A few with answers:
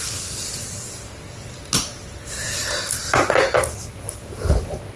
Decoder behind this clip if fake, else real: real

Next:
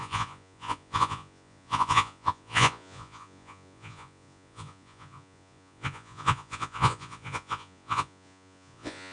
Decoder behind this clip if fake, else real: fake, vocoder, Vocos